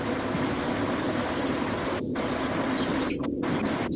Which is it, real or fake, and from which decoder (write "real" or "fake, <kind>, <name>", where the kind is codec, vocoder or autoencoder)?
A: real